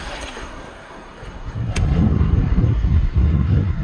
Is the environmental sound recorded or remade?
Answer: remade